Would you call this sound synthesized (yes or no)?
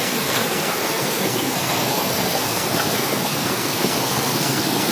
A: yes